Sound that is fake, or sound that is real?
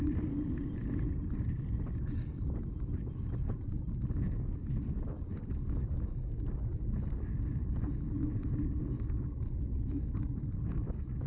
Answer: real